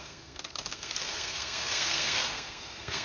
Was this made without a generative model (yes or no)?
no